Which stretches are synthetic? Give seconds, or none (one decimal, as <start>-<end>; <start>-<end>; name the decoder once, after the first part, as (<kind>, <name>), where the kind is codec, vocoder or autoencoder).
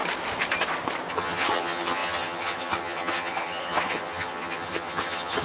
1.1-5.4 (vocoder, HiFi-GAN)